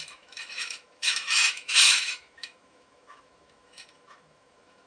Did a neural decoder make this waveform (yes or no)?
yes